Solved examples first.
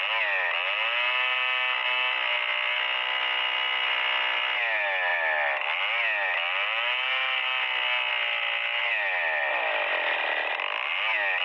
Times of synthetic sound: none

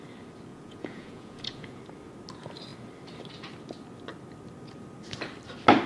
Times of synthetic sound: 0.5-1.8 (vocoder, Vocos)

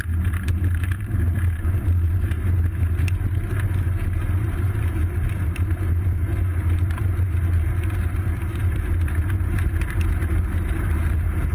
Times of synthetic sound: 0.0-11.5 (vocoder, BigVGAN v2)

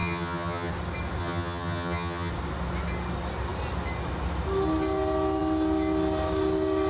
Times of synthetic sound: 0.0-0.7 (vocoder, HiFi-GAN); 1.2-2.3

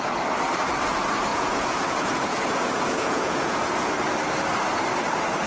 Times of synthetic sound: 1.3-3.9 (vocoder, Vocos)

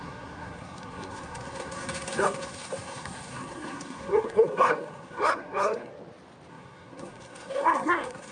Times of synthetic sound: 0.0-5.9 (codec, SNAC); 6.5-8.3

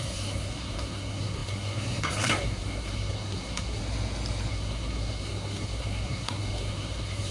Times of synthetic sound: 0.0-3.8 (codec, SNAC); 4.5-7.3

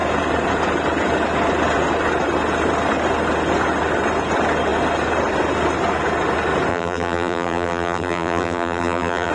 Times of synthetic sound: 6.7-9.3 (vocoder, BigVGAN v2)